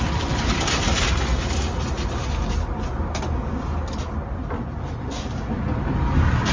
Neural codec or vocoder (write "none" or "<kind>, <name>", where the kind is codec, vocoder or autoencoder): none